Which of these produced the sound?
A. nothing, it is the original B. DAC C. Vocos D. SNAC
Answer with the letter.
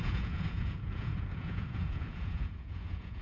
C